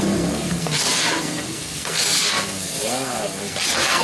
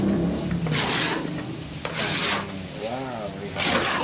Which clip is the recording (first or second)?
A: second